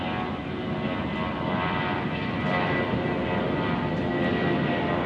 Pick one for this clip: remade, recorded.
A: recorded